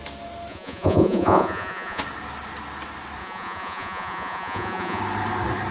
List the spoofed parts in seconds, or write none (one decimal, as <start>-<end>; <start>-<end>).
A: 0.5-2.0; 3.2-5.0